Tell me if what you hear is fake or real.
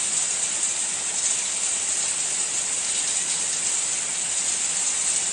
real